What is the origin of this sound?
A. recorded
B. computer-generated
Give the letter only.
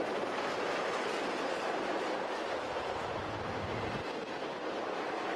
A